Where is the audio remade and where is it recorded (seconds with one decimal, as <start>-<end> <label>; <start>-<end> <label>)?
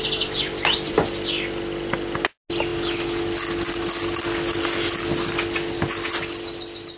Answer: 0.0-7.0 recorded